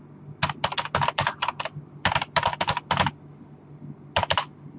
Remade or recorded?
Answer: recorded